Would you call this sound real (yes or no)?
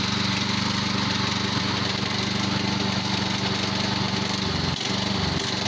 yes